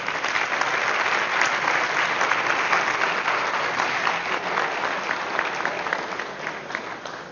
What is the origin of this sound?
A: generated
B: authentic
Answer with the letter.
B